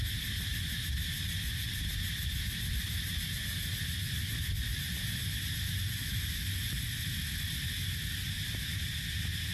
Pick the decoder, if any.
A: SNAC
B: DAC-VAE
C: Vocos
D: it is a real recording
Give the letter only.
D